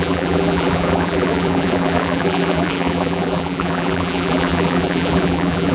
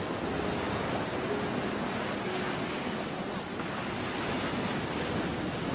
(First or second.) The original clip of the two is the second